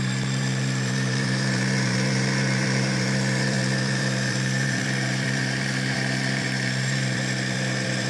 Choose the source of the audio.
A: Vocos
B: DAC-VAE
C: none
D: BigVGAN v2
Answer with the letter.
D